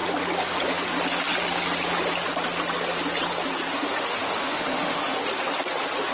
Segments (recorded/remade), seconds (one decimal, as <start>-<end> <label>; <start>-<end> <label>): 0.0-3.7 recorded; 3.7-5.2 remade; 5.2-6.1 recorded